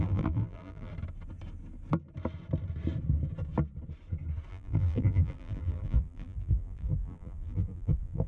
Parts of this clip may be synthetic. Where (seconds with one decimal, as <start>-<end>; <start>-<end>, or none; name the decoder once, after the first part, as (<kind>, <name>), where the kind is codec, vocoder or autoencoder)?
0.0-0.9 (vocoder, BigVGAN v2); 4.5-8.3